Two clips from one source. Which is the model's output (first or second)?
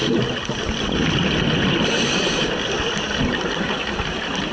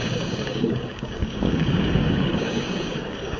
second